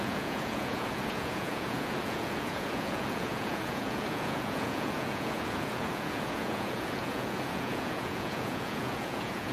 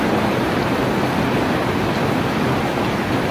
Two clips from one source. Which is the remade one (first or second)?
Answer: first